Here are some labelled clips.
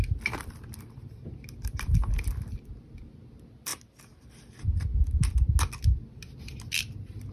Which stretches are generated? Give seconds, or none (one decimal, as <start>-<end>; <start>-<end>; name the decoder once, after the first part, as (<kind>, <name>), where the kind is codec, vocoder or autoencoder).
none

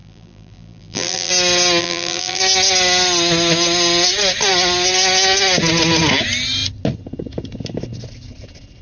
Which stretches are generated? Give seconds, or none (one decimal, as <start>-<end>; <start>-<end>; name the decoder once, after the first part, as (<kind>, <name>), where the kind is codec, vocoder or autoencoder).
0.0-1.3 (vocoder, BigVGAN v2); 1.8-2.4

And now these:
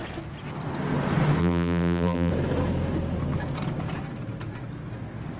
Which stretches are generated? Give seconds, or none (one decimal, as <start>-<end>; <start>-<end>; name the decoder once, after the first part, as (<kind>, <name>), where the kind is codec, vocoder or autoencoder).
1.4-2.3 (vocoder, BigVGAN v2)

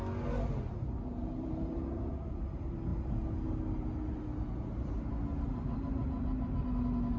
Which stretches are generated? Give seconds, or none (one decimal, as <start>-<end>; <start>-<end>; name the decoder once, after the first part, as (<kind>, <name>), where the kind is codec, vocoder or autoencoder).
1.2-1.8 (vocoder, BigVGAN v2)

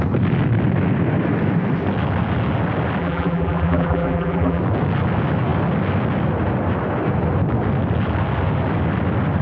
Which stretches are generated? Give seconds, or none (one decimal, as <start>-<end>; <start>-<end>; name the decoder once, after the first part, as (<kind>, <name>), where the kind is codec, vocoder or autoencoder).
3.0-4.6 (vocoder, BigVGAN v2)